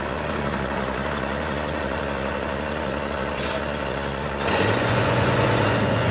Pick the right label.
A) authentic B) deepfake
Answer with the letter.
B